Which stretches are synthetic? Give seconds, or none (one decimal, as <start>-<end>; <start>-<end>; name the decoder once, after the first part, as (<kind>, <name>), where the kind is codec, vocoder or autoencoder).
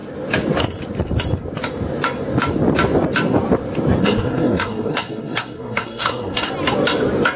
4.0-6.5 (codec, SNAC)